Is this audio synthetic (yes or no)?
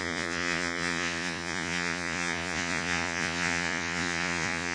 yes